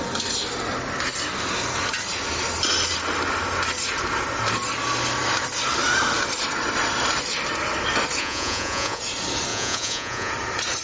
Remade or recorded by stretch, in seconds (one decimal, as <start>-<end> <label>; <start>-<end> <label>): 0.0-8.2 recorded; 8.2-9.0 remade; 9.0-9.5 recorded; 9.5-10.3 remade; 10.3-10.8 recorded